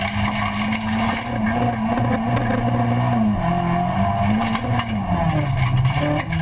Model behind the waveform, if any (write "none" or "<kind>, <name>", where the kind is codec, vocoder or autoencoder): none